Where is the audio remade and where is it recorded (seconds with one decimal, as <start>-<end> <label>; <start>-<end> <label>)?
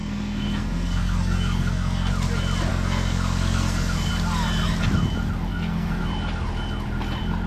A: 0.0-2.1 remade; 2.1-2.7 recorded; 2.7-4.1 remade; 4.1-5.5 recorded; 5.5-6.0 remade; 6.0-7.5 recorded